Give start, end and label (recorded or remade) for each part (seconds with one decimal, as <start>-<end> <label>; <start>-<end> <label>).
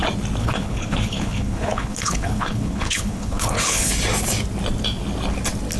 0.0-0.4 recorded; 0.4-3.9 remade; 3.9-5.8 recorded